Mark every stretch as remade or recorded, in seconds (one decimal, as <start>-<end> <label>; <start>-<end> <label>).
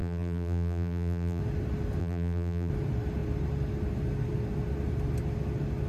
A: 0.0-1.4 remade; 1.4-2.0 recorded; 2.0-2.7 remade; 2.7-5.9 recorded